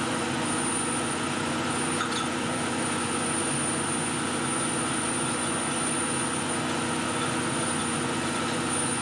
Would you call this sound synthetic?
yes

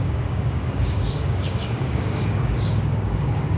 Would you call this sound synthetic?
yes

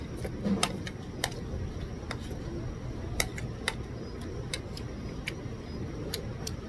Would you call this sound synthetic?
no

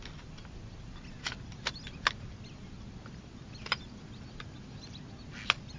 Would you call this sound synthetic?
no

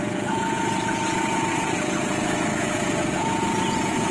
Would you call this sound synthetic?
yes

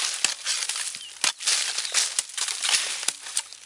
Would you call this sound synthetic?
no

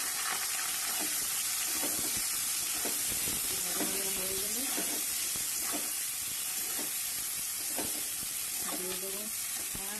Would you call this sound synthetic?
no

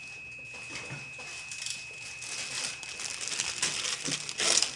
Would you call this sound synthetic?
no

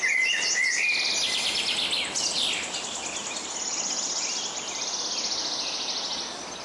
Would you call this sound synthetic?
no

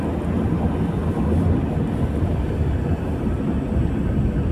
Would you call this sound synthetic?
no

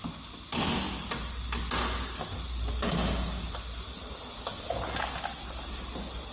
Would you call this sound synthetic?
no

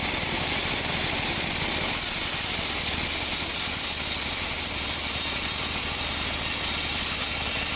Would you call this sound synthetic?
yes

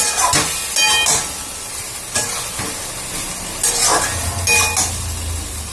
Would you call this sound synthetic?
no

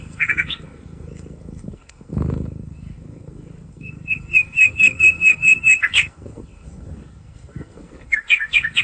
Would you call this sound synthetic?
yes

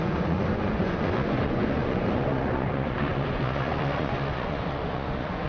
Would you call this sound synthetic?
yes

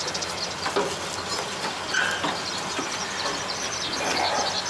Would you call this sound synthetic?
no